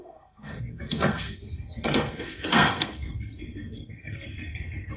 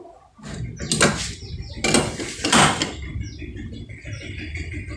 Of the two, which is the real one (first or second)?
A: second